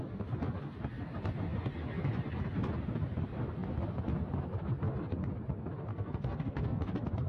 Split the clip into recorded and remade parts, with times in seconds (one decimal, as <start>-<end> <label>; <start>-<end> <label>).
0.0-5.9 recorded; 5.9-6.8 remade; 6.8-7.3 recorded